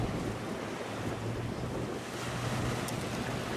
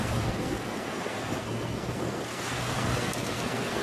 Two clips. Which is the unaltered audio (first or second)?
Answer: first